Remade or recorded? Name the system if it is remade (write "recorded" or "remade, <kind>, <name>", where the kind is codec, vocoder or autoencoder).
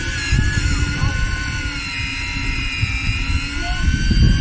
recorded